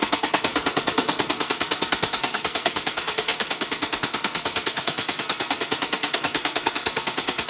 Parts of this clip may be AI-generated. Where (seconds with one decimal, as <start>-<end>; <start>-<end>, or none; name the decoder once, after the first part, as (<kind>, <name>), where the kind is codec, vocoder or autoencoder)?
0.0-7.5 (codec, SNAC)